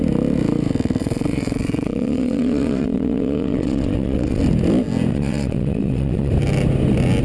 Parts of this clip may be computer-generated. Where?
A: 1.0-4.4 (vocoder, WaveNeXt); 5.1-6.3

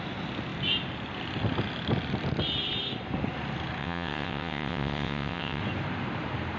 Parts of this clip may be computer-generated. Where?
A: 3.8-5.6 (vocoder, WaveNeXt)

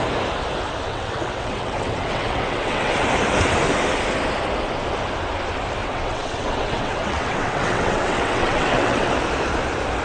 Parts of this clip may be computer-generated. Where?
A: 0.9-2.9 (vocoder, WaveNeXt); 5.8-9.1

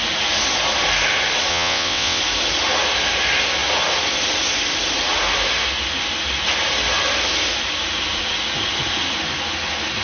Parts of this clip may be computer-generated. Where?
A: 1.5-2.2 (vocoder, WaveNeXt)

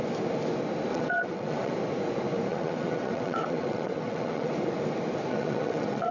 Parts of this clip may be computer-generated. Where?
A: 0.9-1.7 (vocoder, WaveNeXt); 2.5-4.5; 5.3-6.1

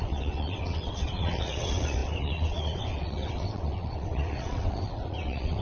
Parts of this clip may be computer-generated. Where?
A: 0.0-5.6 (vocoder, WaveNeXt)

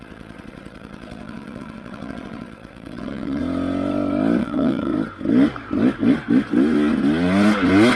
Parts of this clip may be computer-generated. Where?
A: 0.0-3.4 (vocoder, WaveNeXt); 4.4-4.9

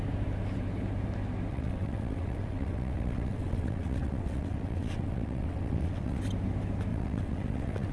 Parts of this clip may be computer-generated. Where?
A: 1.5-6.2 (vocoder, WaveNeXt); 6.9-7.9